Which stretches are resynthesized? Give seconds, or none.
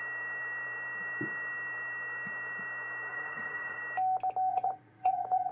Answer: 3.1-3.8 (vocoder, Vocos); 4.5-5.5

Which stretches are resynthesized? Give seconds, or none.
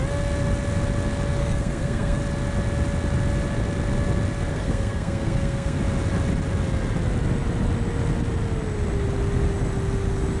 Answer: 1.4-2.2 (codec, SNAC); 4.5-5.8